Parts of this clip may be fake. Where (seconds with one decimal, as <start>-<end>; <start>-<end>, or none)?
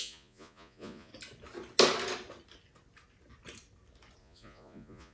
0.0-1.1; 4.2-5.1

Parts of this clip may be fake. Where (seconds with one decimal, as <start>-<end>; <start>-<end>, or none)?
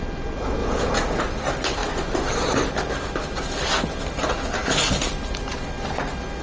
0.6-1.2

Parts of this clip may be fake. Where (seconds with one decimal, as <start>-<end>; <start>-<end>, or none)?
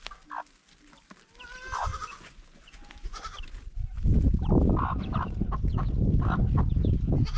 1.8-3.4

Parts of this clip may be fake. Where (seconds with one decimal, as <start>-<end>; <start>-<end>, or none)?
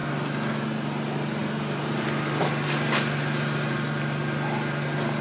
none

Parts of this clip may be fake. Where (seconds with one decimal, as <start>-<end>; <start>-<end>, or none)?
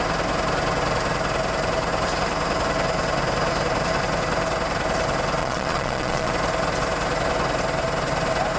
5.4-6.3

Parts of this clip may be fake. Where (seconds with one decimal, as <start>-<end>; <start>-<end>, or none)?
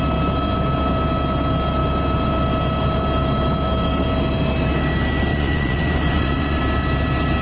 5.3-6.6